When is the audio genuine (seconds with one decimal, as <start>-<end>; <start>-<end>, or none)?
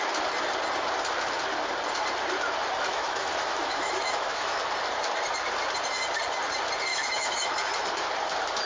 0.0-2.9; 4.6-6.9; 7.7-8.7